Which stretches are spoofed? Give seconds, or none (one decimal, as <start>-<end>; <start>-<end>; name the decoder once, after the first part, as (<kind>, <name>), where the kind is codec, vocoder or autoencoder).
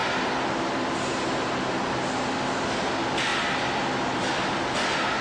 none